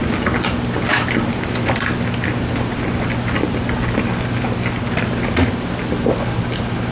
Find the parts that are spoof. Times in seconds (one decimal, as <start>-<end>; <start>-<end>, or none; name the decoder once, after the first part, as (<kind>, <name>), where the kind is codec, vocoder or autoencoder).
none